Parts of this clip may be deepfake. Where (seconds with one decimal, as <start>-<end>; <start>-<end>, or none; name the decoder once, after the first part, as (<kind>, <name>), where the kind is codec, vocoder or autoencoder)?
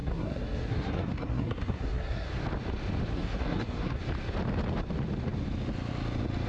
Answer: 0.0-2.3 (codec, SNAC); 3.1-4.0